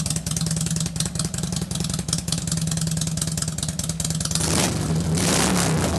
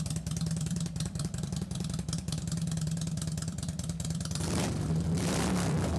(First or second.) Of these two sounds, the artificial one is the second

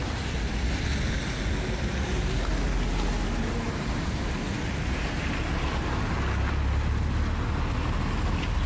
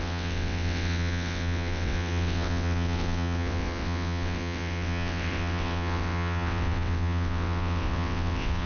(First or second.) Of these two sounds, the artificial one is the second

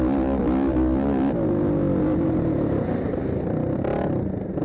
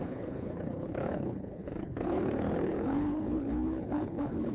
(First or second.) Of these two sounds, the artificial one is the second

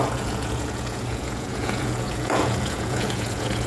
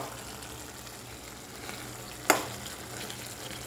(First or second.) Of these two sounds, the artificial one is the first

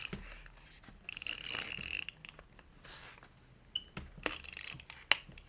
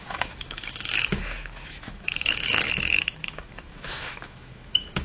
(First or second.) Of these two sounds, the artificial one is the second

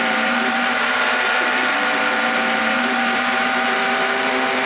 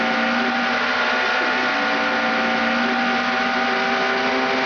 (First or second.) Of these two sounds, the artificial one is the first